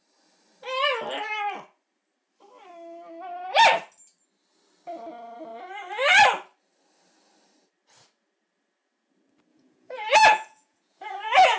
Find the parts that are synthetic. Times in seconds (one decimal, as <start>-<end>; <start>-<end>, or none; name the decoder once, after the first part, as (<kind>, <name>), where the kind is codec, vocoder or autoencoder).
9.5-11.6 (vocoder, Vocos)

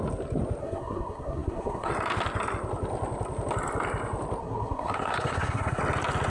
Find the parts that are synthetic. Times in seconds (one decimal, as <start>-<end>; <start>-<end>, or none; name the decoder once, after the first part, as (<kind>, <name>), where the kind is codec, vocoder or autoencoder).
0.6-1.9 (codec, SNAC); 4.4-5.8

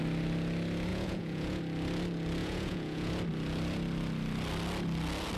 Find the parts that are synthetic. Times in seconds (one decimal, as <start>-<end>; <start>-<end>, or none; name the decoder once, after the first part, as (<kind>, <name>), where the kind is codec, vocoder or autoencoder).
0.9-1.6 (vocoder, Vocos); 2.4-3.1

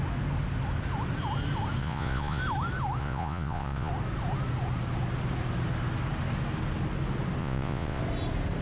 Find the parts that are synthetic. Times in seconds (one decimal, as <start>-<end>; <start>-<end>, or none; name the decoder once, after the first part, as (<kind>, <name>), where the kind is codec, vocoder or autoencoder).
1.8-2.4 (vocoder, Vocos); 3.0-3.9; 7.4-8.0

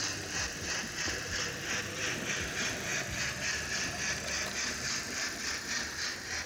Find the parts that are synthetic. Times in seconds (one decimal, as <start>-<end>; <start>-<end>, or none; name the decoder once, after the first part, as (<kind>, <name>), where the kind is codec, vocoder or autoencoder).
0.0-2.9 (vocoder, BigVGAN v2); 4.7-6.5